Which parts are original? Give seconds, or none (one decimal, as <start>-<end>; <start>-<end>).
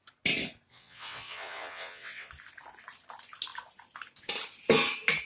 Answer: 0.0-0.7; 2.3-5.3